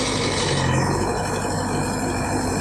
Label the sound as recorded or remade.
remade